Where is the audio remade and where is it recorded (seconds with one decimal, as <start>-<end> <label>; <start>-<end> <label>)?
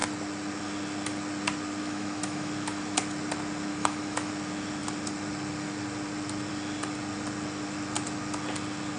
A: 0.0-1.8 recorded; 1.8-2.5 remade; 2.5-3.7 recorded; 3.7-4.3 remade; 4.3-9.0 recorded